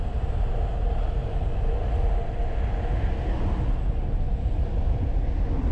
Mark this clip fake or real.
real